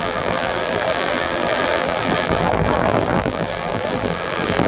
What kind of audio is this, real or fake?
fake